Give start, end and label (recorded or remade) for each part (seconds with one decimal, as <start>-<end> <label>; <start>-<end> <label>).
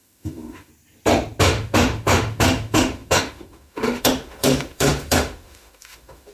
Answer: 0.0-0.7 remade; 0.7-1.4 recorded; 1.4-6.3 remade